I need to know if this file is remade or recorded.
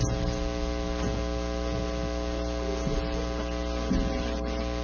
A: recorded